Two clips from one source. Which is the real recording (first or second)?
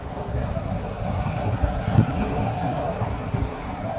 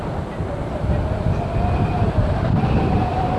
second